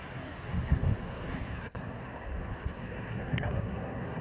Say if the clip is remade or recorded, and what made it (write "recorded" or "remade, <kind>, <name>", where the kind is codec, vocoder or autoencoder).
remade, codec, SNAC